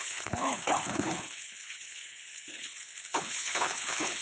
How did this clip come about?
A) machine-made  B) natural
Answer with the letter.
A